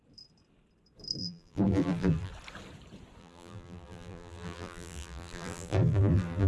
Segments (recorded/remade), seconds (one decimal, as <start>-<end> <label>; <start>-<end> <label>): 0.0-1.2 recorded; 1.2-2.3 remade; 2.3-3.2 recorded; 3.2-6.5 remade